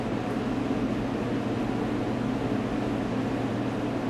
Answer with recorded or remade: recorded